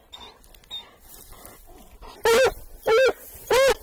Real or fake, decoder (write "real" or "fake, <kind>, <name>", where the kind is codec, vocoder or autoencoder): real